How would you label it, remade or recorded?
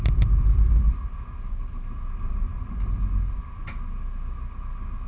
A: recorded